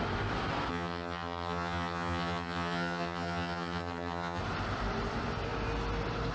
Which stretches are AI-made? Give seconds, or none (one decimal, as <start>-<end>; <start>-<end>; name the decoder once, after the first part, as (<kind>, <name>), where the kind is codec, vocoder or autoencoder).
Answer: 0.7-4.4 (vocoder, HiFi-GAN)